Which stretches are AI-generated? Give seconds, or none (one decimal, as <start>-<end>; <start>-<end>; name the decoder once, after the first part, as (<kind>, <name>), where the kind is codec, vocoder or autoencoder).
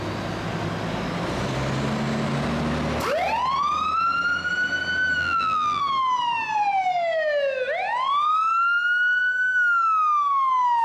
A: 5.2-5.8 (vocoder, BigVGAN v2)